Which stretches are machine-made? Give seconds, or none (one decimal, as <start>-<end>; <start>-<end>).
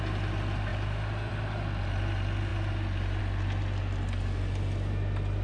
none